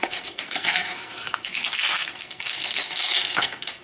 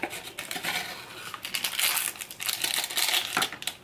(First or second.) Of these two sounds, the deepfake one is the first